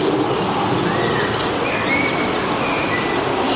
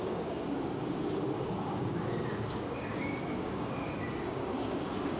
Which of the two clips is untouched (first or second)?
first